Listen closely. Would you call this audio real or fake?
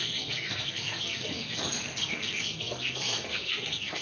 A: fake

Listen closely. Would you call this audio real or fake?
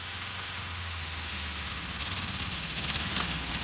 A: fake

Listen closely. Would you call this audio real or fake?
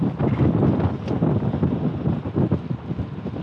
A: real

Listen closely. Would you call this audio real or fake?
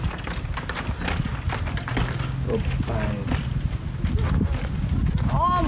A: real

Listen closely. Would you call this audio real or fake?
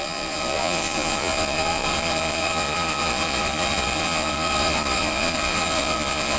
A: fake